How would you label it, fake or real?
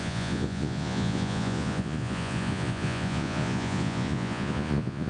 fake